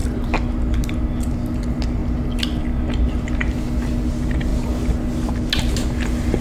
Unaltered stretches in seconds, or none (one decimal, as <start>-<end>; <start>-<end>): 0.0-6.4